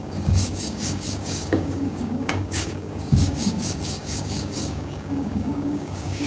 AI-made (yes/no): yes